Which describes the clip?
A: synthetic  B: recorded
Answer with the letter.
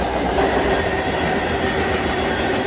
B